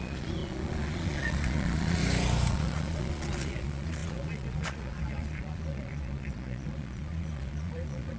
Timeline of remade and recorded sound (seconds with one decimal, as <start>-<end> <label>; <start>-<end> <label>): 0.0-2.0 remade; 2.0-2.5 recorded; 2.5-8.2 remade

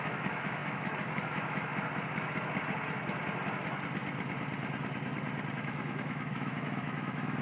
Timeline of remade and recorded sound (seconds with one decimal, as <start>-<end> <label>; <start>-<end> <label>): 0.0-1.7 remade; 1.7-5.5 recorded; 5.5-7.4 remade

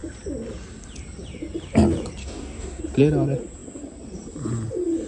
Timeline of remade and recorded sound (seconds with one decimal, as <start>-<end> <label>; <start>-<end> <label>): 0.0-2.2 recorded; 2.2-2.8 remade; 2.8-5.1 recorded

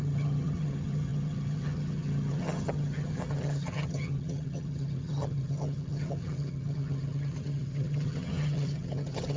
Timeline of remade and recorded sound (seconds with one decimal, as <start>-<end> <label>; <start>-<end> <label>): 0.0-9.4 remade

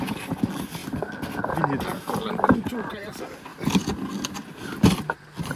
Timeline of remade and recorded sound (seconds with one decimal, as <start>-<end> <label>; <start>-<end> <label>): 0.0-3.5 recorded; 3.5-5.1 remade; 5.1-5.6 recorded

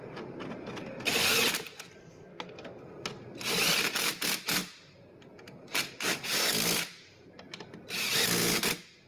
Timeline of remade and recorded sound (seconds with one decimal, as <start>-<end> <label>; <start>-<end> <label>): 0.0-2.0 recorded; 2.0-2.8 remade; 2.8-9.1 recorded

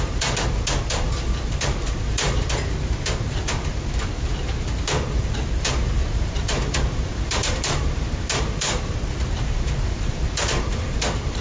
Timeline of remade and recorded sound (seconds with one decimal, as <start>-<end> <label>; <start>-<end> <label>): 0.0-11.4 remade

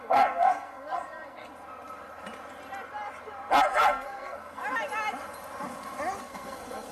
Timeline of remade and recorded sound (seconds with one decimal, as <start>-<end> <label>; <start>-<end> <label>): 0.0-1.5 remade; 1.5-3.6 recorded; 3.6-4.6 remade; 4.6-6.2 recorded; 6.2-6.9 remade